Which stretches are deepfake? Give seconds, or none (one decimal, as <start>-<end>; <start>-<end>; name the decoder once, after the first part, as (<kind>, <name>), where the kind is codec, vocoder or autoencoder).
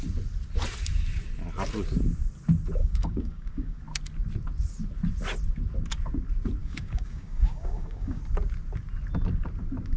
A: 2.8-3.8 (codec, DAC); 6.6-8.2